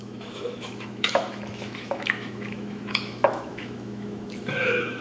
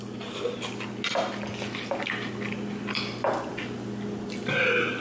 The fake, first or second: first